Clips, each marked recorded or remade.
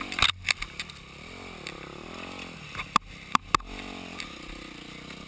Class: recorded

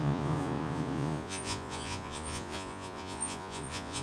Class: remade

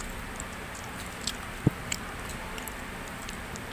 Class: recorded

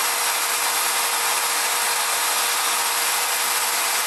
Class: recorded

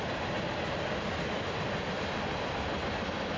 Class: recorded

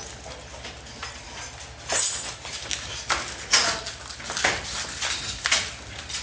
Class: recorded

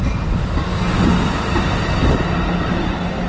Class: recorded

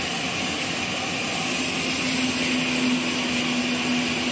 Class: recorded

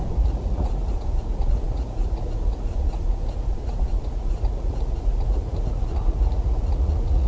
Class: remade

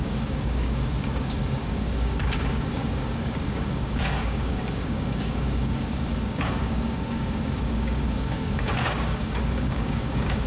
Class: remade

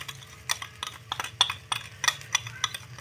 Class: recorded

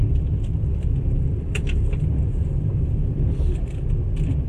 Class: recorded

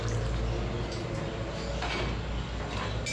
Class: recorded